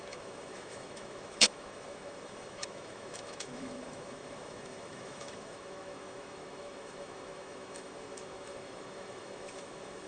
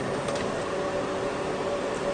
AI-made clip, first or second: first